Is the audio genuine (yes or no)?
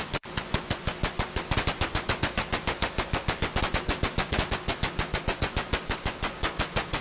no